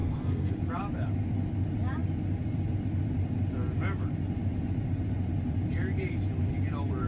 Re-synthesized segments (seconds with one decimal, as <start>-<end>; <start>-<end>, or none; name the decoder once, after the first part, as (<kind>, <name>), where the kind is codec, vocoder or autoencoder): 0.0-0.5 (codec, SNAC)